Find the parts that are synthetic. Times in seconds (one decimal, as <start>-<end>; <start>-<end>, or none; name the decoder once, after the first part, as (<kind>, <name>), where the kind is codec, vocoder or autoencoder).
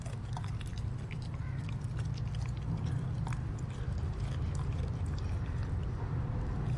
none